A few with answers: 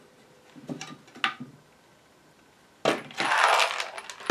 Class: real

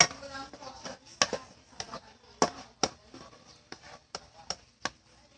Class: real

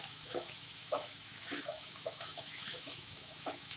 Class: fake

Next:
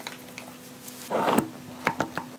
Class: real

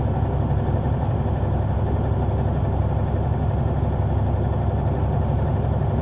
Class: real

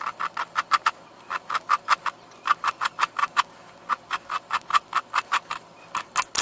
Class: real